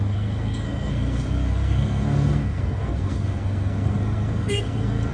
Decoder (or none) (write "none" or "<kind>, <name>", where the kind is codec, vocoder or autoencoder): codec, SNAC